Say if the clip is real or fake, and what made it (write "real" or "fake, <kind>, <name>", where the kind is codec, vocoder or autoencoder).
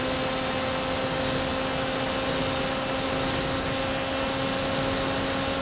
real